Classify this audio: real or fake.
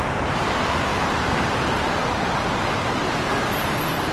fake